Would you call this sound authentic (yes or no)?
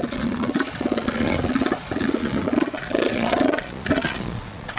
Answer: no